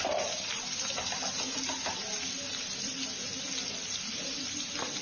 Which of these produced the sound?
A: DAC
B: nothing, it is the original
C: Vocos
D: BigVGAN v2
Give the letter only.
B